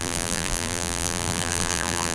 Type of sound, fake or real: fake